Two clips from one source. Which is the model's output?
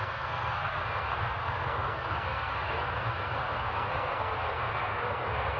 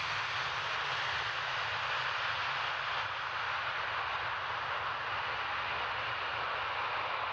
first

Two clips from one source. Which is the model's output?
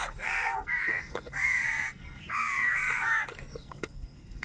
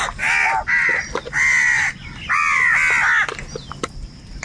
first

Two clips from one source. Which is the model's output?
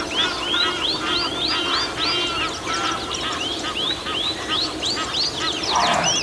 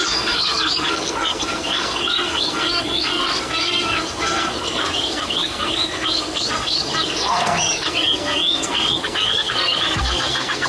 second